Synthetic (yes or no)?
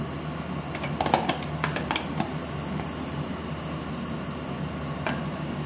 no